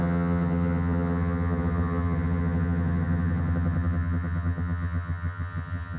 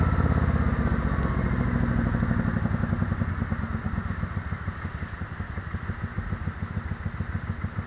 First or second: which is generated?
first